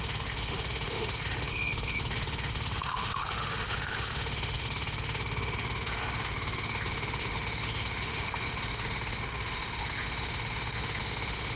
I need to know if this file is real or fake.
fake